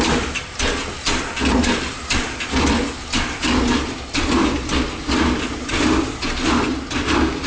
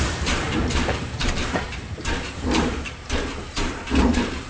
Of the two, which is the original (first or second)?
first